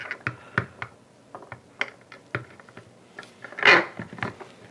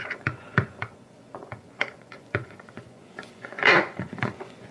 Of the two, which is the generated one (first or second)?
second